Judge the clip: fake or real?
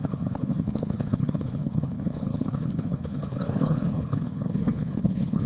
fake